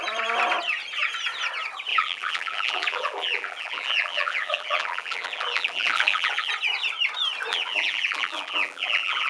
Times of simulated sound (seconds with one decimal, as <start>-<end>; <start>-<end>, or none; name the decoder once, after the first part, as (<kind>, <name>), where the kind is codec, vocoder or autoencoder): 1.9-6.5 (vocoder, BigVGAN v2); 7.5-9.3